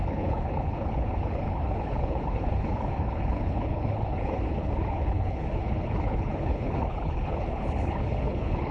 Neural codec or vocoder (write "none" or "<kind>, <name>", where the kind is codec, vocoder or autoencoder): codec, HILCodec